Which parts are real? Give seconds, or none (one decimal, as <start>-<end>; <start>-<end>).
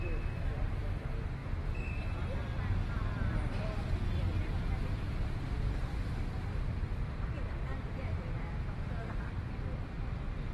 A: 1.4-2.6